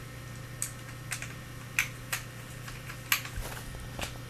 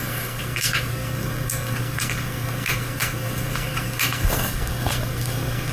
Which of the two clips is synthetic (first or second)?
second